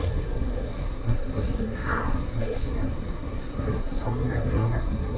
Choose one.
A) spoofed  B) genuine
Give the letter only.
A